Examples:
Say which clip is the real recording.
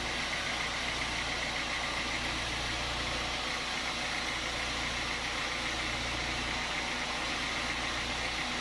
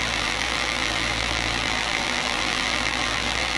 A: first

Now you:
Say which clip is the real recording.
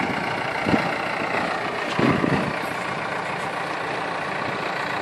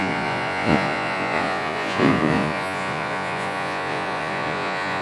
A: first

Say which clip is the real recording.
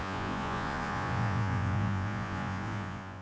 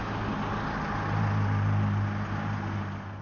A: second